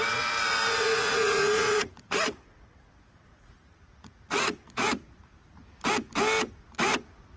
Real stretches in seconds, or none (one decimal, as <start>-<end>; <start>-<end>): 5.6-6.5